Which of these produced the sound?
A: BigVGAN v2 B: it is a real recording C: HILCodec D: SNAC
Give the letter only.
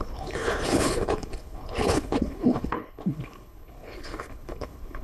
C